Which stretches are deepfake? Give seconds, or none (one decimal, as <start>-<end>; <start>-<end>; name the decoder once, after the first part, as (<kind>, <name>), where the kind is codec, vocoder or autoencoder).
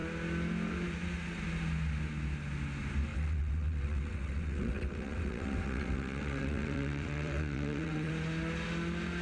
3.1-8.1 (vocoder, WaveNeXt)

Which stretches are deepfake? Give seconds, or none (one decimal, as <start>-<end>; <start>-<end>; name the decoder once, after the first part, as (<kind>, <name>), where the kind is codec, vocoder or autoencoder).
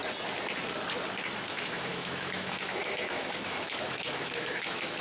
1.5-5.0 (autoencoder, DAC-VAE)